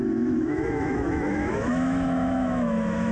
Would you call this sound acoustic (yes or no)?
no